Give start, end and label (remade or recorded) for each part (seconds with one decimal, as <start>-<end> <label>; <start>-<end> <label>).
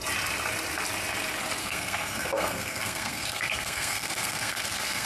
0.0-1.6 recorded; 1.6-5.1 remade